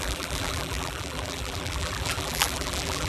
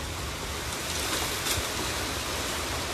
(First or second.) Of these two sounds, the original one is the second